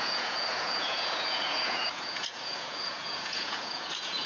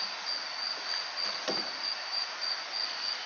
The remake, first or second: first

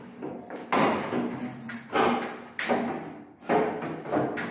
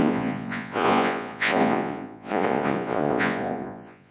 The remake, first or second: second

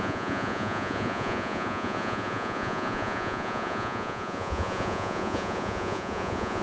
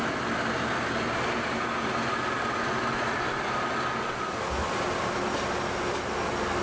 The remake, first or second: first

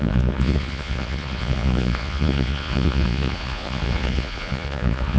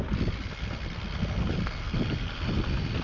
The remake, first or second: first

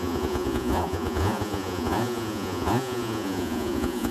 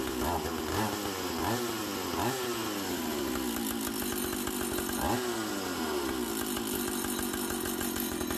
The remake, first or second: first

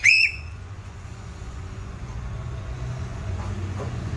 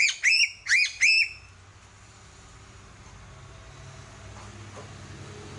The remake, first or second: first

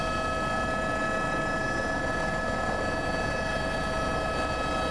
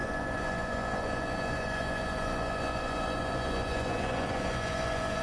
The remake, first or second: second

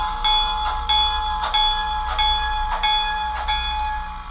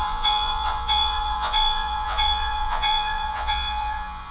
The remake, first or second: second